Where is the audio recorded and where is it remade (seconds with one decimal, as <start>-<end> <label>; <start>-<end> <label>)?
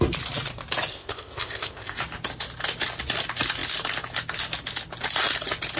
0.0-0.9 recorded; 0.9-2.0 remade; 2.0-5.8 recorded